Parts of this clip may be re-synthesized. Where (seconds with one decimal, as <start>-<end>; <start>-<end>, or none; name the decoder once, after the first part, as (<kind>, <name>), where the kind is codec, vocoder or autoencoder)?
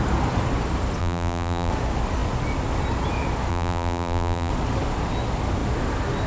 1.0-1.7 (vocoder, BigVGAN v2); 3.5-4.5